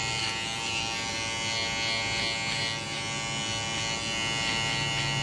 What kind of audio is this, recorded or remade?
recorded